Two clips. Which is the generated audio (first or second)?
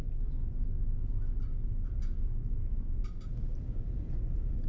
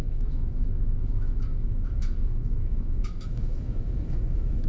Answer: second